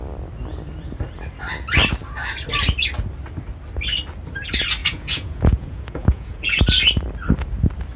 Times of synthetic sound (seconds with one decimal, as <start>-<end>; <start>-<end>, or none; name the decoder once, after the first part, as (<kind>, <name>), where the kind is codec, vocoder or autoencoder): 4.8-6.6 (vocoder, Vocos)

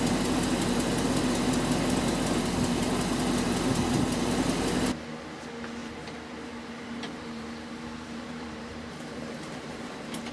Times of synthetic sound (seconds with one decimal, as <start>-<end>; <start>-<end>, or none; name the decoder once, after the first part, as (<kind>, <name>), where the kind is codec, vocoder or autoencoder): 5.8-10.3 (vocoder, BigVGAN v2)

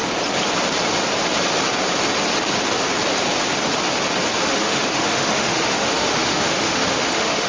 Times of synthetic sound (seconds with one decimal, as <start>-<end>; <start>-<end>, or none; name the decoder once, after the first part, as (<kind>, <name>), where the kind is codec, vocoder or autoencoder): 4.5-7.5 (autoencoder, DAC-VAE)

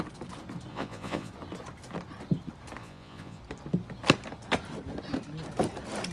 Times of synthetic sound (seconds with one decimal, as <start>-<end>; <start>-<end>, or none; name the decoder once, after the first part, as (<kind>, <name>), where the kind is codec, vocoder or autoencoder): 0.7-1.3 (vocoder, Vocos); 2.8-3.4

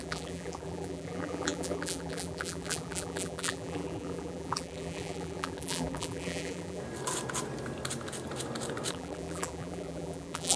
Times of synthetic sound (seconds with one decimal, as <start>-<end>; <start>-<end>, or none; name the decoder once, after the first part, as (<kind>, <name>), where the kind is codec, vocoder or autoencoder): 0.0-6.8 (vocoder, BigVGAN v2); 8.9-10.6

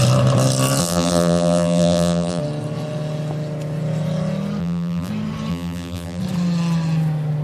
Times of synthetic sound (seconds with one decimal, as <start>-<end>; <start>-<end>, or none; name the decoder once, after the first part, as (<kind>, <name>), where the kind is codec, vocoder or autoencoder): 0.8-2.4 (vocoder, BigVGAN v2); 4.6-5.1; 5.5-6.2

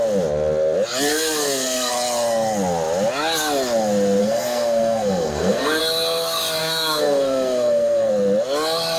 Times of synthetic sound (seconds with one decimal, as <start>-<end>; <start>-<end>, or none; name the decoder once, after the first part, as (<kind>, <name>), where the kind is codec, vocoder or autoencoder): 1.1-1.9 (codec, SNAC); 4.2-5.8; 6.6-8.1

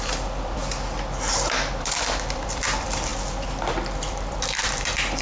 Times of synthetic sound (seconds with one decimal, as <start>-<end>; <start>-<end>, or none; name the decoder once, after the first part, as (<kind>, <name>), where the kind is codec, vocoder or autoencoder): 0.0-0.6 (vocoder, BigVGAN v2); 1.7-3.1; 3.7-5.2